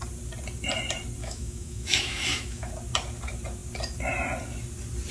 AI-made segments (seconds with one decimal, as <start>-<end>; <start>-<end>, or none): 1.2-2.7

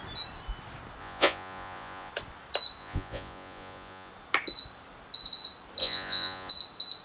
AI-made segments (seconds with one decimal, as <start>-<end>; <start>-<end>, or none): 1.0-2.1; 2.8-4.1; 5.8-6.5

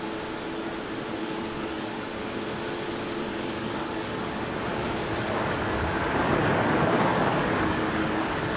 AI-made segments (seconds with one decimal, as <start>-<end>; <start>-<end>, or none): 1.2-2.2; 3.3-4.3; 4.7-8.6

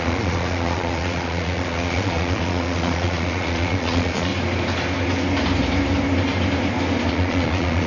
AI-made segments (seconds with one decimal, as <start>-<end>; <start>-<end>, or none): 0.0-4.3; 7.1-7.9

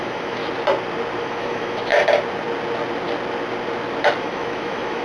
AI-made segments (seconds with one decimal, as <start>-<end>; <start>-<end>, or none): 0.0-0.4; 1.2-1.9; 4.2-5.0

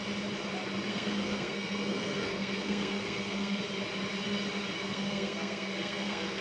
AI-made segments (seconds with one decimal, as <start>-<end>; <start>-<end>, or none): 0.9-3.6; 4.7-6.4

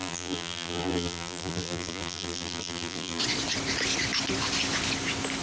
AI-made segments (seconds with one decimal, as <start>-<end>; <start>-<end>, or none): 0.0-3.2

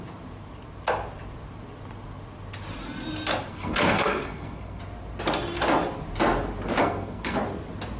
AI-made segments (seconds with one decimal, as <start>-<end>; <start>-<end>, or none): 3.5-4.8; 6.8-7.4